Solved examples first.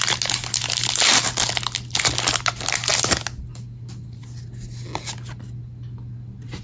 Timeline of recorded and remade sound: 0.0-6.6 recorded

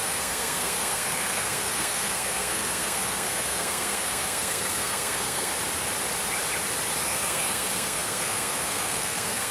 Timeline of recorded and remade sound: 0.0-5.5 remade; 5.5-7.1 recorded; 7.1-9.5 remade

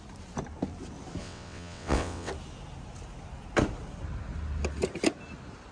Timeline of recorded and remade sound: 0.0-1.2 recorded; 1.2-2.3 remade; 2.3-5.7 recorded

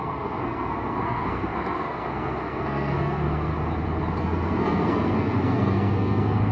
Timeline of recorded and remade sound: 0.0-3.5 remade; 3.5-4.2 recorded; 4.2-6.5 remade

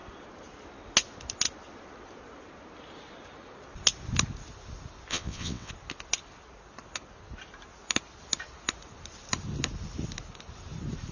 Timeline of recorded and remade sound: 0.0-5.1 recorded; 5.1-5.7 remade; 5.7-11.1 recorded

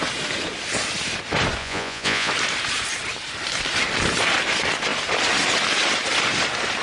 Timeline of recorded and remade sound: 0.0-1.6 recorded; 1.6-2.3 remade; 2.3-6.8 recorded